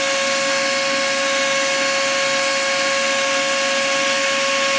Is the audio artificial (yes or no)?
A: no